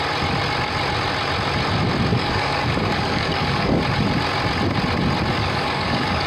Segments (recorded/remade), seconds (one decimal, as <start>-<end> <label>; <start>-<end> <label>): 0.0-2.1 recorded; 2.1-3.8 remade; 3.8-5.3 recorded; 5.3-6.3 remade